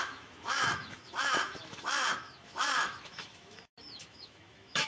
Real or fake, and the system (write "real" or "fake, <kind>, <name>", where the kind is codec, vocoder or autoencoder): fake, autoencoder, DAC-VAE